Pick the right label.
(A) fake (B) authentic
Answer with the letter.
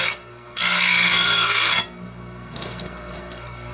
A